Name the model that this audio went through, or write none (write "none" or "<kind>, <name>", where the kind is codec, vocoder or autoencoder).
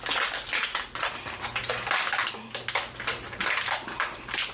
none